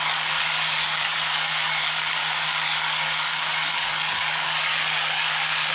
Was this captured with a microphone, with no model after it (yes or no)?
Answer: no